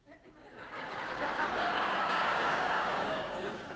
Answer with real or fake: fake